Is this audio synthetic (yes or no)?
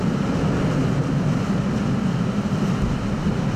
no